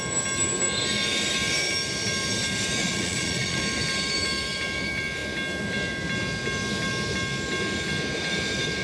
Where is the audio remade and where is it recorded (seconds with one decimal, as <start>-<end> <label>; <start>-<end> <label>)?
0.0-2.8 recorded; 2.8-3.6 remade; 3.6-8.8 recorded